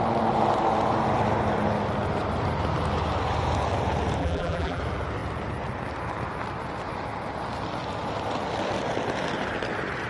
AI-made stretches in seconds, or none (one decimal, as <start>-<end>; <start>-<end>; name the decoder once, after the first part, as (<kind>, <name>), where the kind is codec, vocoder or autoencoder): 4.2-4.8 (vocoder, BigVGAN v2)